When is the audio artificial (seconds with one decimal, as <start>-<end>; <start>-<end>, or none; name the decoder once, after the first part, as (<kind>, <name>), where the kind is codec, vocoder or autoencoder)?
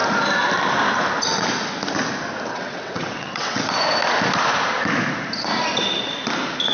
2.5-3.6 (vocoder, WaveNeXt)